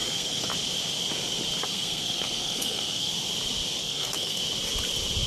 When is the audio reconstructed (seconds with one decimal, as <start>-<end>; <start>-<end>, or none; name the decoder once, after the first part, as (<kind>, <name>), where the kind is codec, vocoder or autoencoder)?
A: 0.0-0.5 (codec, SNAC); 1.7-3.1; 3.8-4.4